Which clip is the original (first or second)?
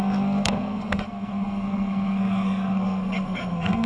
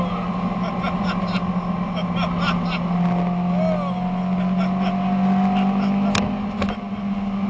second